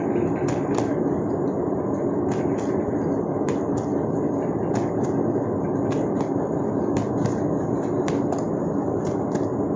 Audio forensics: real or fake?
real